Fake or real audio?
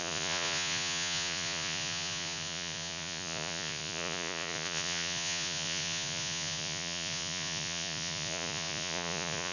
fake